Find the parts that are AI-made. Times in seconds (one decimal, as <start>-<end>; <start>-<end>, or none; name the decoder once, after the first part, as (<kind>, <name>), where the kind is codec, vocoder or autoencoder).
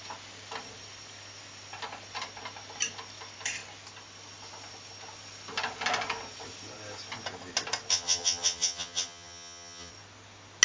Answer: 7.9-9.9 (vocoder, HiFi-GAN)